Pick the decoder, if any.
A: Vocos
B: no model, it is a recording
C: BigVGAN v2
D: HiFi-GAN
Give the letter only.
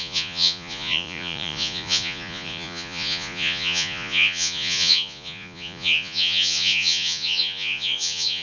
A